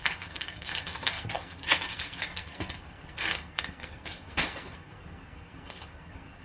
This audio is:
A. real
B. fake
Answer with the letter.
B